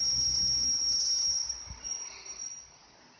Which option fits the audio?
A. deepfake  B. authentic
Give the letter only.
B